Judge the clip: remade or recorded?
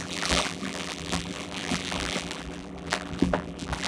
remade